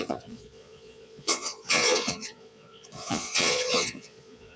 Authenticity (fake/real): fake